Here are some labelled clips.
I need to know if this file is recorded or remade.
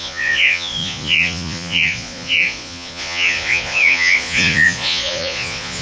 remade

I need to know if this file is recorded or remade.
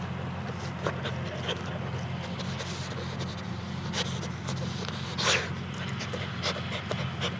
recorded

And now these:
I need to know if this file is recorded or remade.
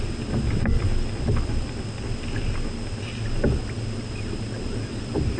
recorded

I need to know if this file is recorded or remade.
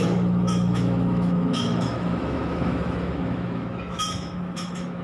remade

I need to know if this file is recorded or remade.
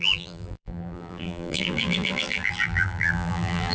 remade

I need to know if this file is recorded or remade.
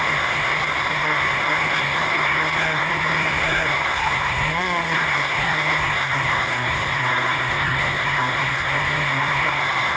remade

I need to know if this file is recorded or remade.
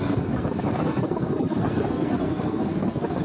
remade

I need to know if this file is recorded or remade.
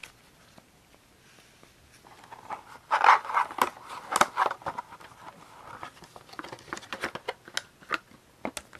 recorded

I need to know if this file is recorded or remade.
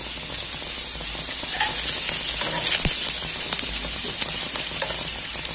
recorded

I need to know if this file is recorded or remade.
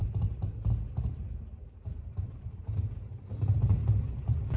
remade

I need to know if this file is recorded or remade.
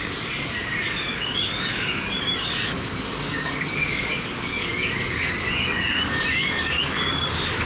remade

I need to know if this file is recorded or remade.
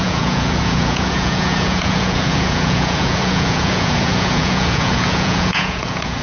remade